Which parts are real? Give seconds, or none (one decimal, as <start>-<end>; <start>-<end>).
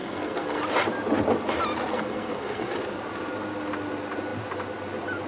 0.6-1.9; 2.7-5.3